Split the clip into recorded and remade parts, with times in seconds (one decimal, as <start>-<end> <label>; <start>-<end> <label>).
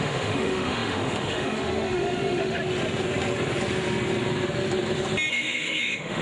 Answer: 0.0-2.6 remade; 2.6-5.3 recorded; 5.3-6.2 remade